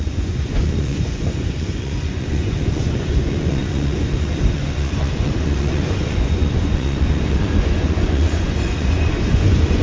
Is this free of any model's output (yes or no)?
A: no